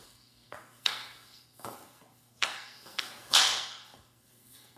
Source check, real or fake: fake